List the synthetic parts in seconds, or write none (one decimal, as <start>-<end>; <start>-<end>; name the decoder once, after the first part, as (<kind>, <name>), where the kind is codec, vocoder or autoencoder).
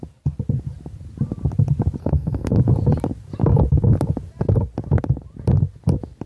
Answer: 2.0-2.6 (codec, SNAC)